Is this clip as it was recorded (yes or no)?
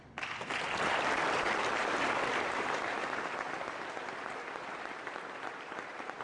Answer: no